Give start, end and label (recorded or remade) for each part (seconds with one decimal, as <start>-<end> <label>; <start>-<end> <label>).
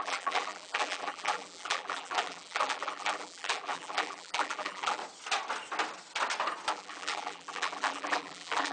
0.0-5.0 remade; 5.0-6.7 recorded; 6.7-8.7 remade